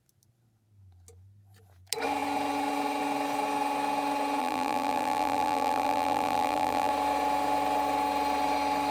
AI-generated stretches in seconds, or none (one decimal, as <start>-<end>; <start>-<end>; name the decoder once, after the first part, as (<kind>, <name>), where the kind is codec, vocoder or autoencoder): 4.4-6.9 (vocoder, BigVGAN v2)